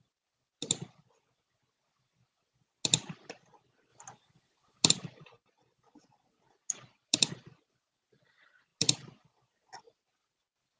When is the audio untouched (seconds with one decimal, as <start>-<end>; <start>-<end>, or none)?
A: 0.0-10.8